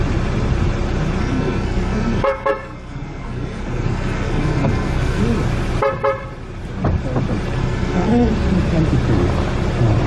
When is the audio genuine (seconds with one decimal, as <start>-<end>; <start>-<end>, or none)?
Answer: 0.0-1.2; 5.2-7.6; 8.3-10.1